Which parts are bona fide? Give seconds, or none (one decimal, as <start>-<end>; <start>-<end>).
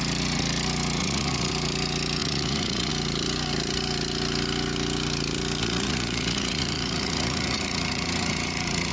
0.0-1.0; 1.5-2.2; 2.9-5.6